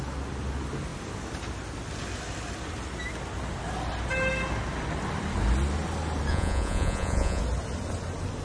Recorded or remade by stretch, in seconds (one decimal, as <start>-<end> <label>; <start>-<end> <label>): 0.0-6.3 recorded; 6.3-7.4 remade; 7.4-8.4 recorded

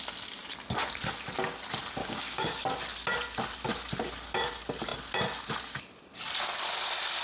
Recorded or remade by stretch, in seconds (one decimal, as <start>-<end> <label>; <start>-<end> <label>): 0.0-2.0 recorded; 2.0-2.6 remade; 2.6-7.2 recorded

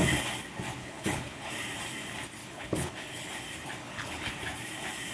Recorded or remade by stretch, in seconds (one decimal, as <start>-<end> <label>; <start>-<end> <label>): 0.0-0.8 recorded; 0.8-1.5 remade; 1.5-2.4 recorded; 2.4-3.3 remade; 3.3-3.8 recorded; 3.8-4.3 remade; 4.3-5.1 recorded

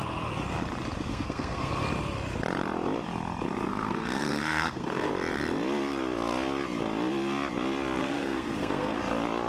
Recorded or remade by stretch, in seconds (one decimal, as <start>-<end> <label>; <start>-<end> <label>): 0.0-1.1 recorded; 1.1-1.7 remade; 1.7-3.7 recorded; 3.7-5.1 remade; 5.1-8.0 recorded; 8.0-9.0 remade; 9.0-9.5 recorded